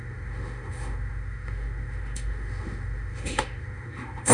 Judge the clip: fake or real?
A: fake